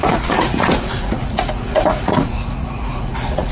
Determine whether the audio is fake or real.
fake